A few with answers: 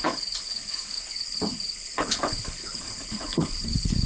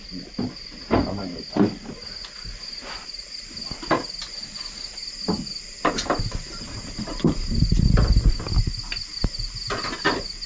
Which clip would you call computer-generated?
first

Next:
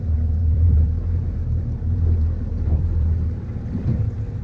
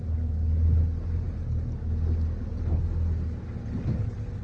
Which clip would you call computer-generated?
first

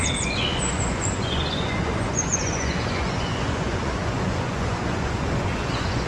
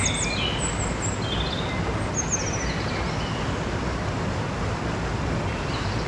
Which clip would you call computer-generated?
first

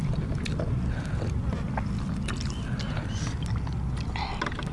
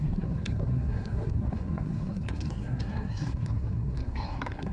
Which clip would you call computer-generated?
second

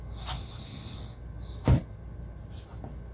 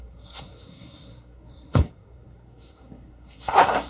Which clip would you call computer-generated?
second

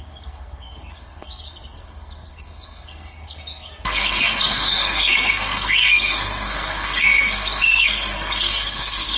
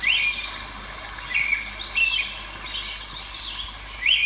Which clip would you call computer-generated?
first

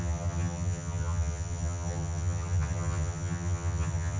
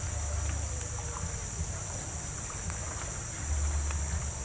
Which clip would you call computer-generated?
first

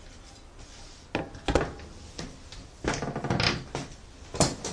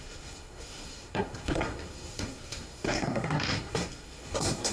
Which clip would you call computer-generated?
second